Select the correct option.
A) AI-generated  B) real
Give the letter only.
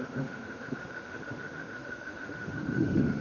A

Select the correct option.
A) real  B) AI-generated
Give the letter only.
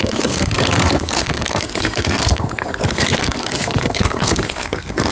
B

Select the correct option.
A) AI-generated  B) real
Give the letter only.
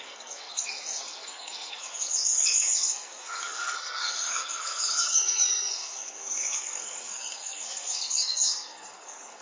A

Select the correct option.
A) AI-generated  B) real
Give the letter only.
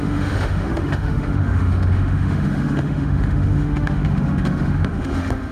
A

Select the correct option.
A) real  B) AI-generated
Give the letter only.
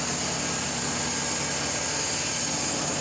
A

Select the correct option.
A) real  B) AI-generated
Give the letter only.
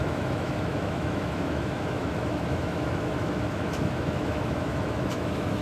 B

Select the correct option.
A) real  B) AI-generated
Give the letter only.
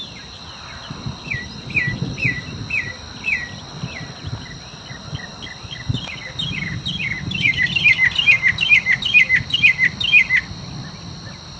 A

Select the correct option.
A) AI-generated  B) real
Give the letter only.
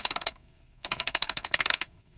A